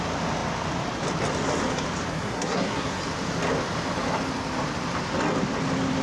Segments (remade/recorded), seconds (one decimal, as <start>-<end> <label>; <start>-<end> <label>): 0.0-2.1 recorded; 2.1-3.0 remade; 3.0-6.0 recorded